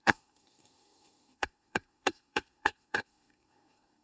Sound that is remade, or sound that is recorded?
remade